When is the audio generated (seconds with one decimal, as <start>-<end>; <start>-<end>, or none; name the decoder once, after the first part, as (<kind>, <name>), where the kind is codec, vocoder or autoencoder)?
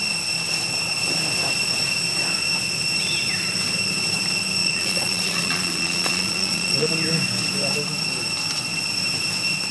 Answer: 4.6-6.9 (vocoder, Vocos)